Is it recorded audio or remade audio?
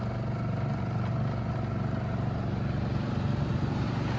recorded